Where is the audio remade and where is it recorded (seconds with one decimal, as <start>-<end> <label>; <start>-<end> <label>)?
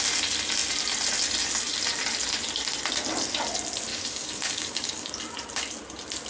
0.0-3.9 recorded; 3.9-5.1 remade; 5.1-6.3 recorded